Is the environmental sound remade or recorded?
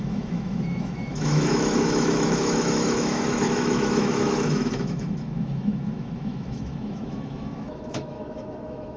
remade